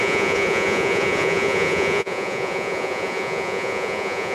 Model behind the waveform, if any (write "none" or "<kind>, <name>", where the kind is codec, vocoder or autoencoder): vocoder, Vocos